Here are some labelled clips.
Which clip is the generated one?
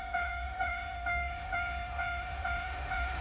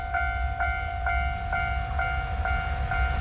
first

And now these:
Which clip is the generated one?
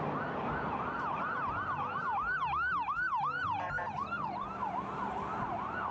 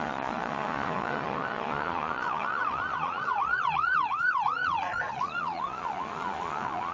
second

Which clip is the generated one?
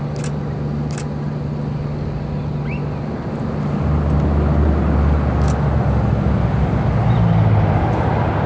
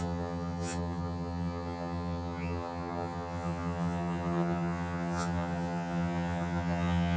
second